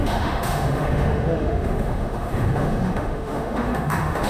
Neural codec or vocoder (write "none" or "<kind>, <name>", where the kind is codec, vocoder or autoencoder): autoencoder, DAC-VAE